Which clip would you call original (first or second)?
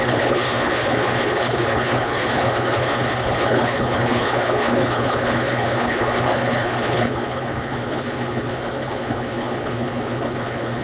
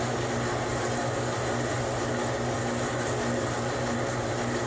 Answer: second